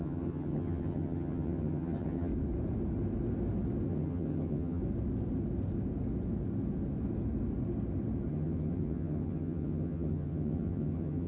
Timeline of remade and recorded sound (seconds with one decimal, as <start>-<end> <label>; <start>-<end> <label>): 0.0-2.3 remade; 2.3-3.9 recorded; 3.9-4.8 remade; 4.8-8.3 recorded; 8.3-11.3 remade

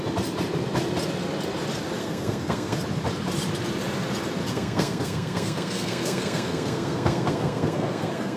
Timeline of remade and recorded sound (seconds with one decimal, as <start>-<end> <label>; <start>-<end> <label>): 0.0-2.0 recorded; 2.0-2.8 remade; 2.8-4.5 recorded; 4.5-8.4 remade

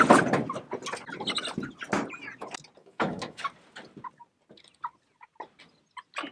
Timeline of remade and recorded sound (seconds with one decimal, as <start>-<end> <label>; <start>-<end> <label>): 0.0-2.8 recorded; 2.8-3.4 remade; 3.4-6.3 recorded

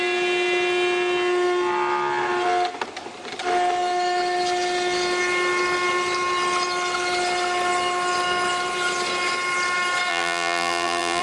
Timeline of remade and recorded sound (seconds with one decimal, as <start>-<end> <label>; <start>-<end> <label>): 0.0-10.1 recorded; 10.1-11.2 remade

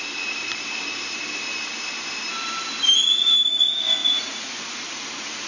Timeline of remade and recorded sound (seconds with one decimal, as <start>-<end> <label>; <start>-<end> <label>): 0.0-4.0 recorded; 4.0-5.5 remade

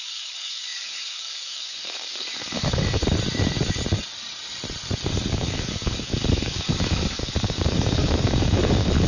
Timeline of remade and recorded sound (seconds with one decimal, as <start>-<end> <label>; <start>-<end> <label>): 0.0-3.0 remade; 3.0-5.3 recorded; 5.3-9.1 remade

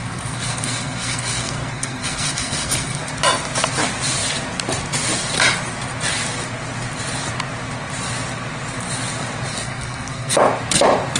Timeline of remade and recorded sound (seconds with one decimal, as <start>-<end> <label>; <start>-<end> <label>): 0.0-3.0 remade; 3.0-9.5 recorded; 9.5-10.4 remade; 10.4-11.2 recorded